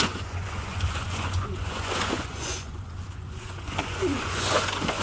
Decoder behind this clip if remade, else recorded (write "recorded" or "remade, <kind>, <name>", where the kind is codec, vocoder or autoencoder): remade, vocoder, Vocos